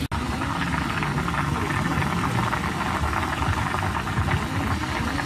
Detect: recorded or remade recorded